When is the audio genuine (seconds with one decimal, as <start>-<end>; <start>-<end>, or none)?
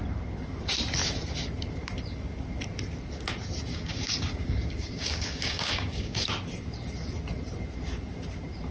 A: 0.0-3.7; 6.3-8.7